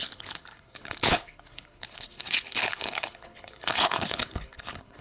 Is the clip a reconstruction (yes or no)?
yes